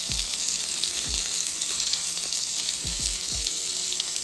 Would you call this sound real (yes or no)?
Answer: no